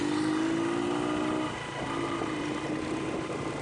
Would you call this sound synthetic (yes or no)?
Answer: no